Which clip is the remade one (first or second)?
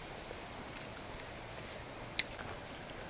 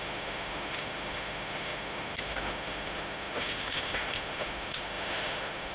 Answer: second